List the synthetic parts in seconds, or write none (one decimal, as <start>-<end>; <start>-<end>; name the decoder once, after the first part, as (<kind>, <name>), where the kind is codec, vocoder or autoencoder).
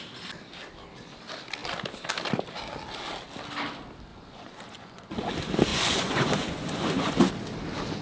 4.1-5.3 (vocoder, Vocos); 5.7-7.3